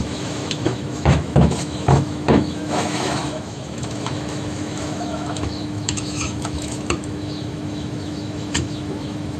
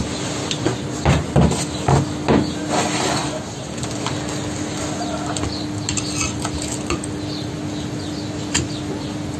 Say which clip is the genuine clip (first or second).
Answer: second